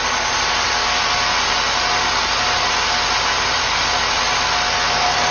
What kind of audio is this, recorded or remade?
recorded